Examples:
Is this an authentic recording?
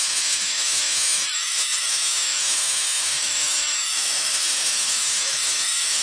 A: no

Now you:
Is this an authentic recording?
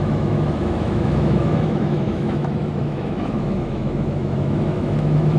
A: no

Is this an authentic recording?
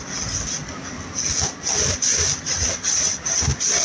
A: yes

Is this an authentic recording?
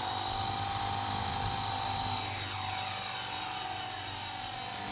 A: yes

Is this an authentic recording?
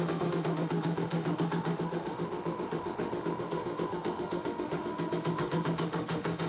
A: no